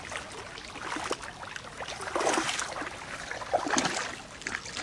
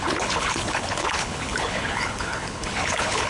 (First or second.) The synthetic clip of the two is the second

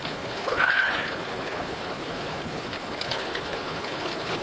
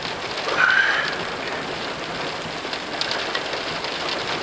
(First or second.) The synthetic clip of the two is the first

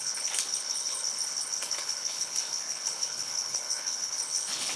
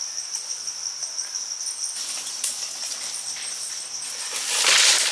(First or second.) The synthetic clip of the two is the first